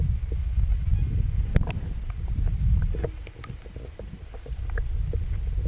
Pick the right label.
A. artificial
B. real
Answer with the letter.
B